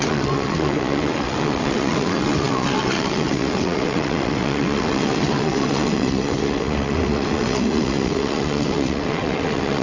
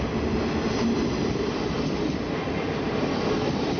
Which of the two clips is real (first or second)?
second